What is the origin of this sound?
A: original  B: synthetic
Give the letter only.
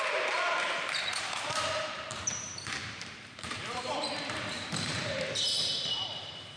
B